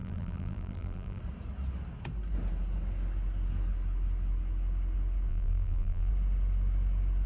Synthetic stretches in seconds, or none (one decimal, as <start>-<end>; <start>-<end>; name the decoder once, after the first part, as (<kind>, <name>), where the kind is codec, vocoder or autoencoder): 0.0-1.2 (vocoder, BigVGAN v2); 5.3-6.1